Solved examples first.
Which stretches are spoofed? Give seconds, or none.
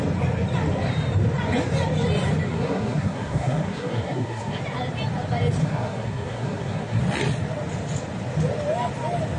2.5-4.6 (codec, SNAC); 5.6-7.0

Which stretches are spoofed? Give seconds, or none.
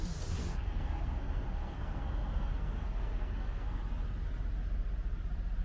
0.4-3.8 (codec, SNAC)